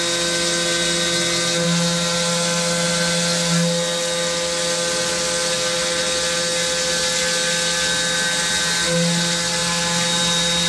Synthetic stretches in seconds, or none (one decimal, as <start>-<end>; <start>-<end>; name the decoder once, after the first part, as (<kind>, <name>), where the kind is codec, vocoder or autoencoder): none